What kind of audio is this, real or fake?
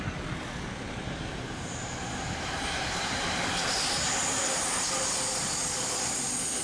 real